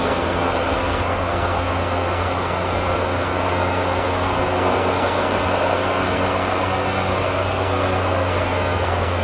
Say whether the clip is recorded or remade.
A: remade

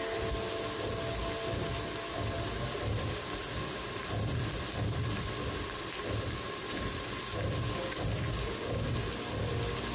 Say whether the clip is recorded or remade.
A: recorded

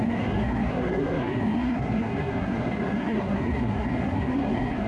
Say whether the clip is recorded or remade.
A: remade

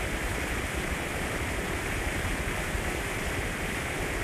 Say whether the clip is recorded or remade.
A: recorded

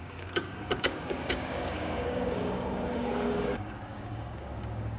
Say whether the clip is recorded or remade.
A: remade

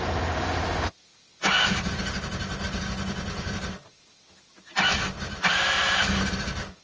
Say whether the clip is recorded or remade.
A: recorded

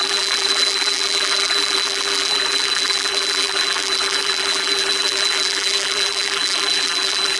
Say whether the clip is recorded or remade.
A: remade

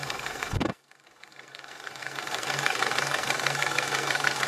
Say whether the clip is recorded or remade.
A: remade